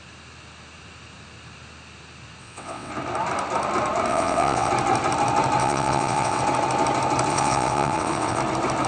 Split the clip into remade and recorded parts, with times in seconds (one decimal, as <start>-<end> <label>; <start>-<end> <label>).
0.0-2.4 recorded; 2.4-2.9 remade; 2.9-4.1 recorded; 4.1-4.7 remade; 4.7-5.6 recorded; 5.6-6.4 remade; 6.4-7.3 recorded; 7.3-8.4 remade; 8.4-8.9 recorded

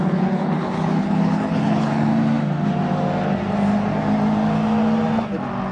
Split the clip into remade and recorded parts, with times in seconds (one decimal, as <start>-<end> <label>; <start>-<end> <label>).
0.0-2.1 remade; 2.1-5.7 recorded

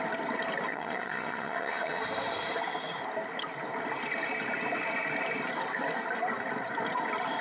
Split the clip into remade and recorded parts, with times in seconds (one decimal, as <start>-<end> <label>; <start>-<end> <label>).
0.0-0.7 recorded; 0.7-2.0 remade; 2.0-7.4 recorded

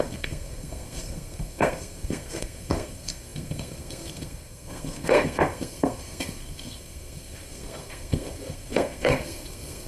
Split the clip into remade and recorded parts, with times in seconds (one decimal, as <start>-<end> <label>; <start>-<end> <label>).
0.0-9.9 remade

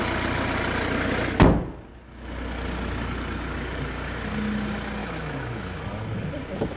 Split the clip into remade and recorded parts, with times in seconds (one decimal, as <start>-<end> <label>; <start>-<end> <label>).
0.0-5.0 recorded; 5.0-5.8 remade; 5.8-6.8 recorded

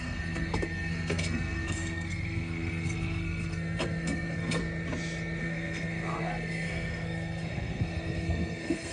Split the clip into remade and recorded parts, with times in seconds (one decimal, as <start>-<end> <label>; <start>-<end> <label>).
0.0-4.6 remade; 4.6-5.4 recorded; 5.4-8.9 remade

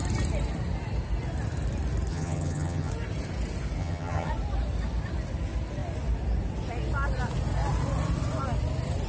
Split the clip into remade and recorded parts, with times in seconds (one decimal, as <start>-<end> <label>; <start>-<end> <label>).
0.0-2.1 recorded; 2.1-2.9 remade; 2.9-3.8 recorded; 3.8-4.3 remade; 4.3-9.1 recorded

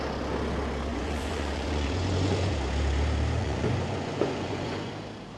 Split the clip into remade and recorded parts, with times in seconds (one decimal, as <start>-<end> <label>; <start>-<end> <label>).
0.0-0.9 recorded; 0.9-2.5 remade; 2.5-3.4 recorded; 3.4-4.9 remade; 4.9-5.4 recorded